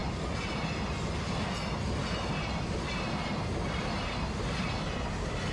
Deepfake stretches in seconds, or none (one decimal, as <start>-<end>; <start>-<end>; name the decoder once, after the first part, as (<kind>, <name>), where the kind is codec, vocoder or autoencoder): none